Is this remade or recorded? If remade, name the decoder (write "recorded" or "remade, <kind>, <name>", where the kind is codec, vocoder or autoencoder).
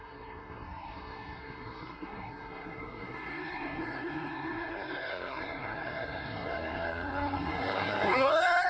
remade, codec, SNAC